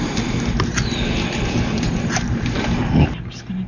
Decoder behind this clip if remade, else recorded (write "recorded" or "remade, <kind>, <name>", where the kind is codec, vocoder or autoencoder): recorded